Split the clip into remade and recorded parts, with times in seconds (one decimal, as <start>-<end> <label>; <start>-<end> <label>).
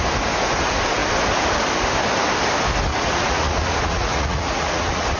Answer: 0.0-2.9 recorded; 2.9-5.2 remade